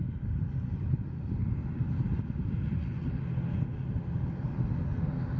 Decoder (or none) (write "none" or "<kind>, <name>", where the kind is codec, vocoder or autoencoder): none